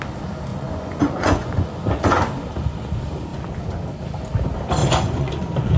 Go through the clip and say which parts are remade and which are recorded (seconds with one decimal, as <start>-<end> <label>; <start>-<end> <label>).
0.0-0.5 recorded; 0.5-2.2 remade; 2.2-4.8 recorded; 4.8-5.8 remade